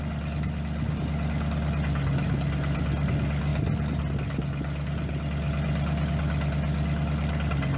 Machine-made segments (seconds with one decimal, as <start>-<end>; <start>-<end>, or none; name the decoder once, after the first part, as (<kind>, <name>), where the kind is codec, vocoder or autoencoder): none